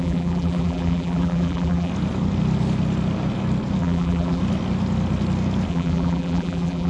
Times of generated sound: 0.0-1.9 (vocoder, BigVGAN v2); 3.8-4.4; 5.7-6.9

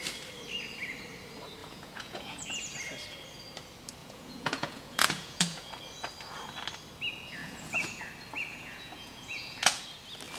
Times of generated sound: 1.6-2.6 (vocoder, Vocos); 4.0-5.7; 7.4-8.0; 8.5-9.8

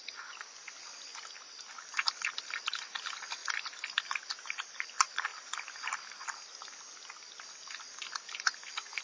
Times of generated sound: none

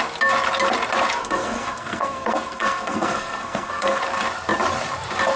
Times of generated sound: 1.2-4.0 (codec, SNAC)

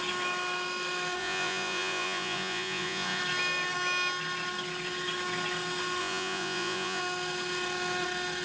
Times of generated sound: 1.2-3.2 (vocoder, Vocos); 6.0-7.0

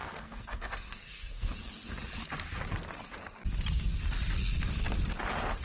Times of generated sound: 0.0-1.7 (codec, SNAC)

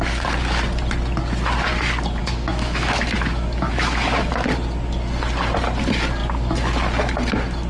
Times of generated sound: 2.2-4.3 (autoencoder, DAC-VAE)